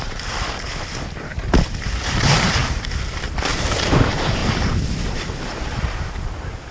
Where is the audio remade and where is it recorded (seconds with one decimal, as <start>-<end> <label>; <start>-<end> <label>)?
0.0-2.6 remade; 2.6-3.1 recorded; 3.1-3.5 remade; 3.5-4.0 recorded; 4.0-4.4 remade; 4.4-5.1 recorded; 5.1-6.7 remade